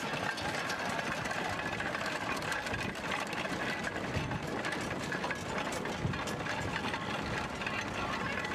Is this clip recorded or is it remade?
recorded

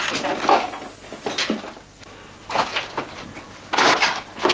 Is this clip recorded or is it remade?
recorded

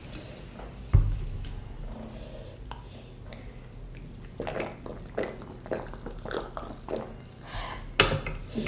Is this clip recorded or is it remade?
recorded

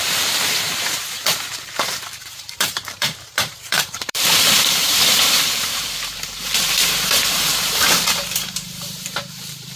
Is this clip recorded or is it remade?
remade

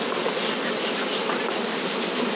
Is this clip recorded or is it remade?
recorded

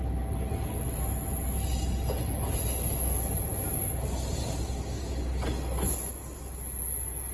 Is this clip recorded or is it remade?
recorded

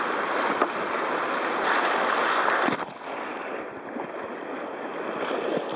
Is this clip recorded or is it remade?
remade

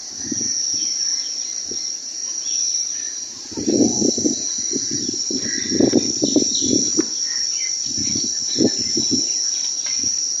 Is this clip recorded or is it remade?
recorded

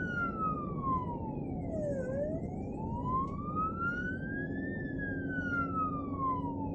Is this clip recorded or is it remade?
recorded